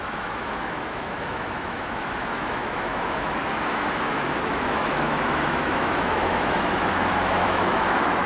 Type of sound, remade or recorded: remade